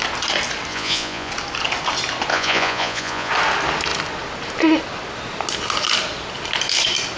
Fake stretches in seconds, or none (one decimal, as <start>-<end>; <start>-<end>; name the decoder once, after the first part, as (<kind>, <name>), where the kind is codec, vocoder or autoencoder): 0.7-1.3 (vocoder, Vocos); 2.3-3.3